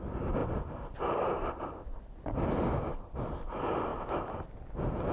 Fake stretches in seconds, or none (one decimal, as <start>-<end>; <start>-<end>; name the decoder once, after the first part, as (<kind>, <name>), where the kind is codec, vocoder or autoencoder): none